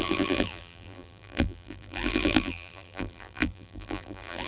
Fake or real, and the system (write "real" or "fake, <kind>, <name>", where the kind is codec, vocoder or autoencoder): fake, vocoder, BigVGAN v2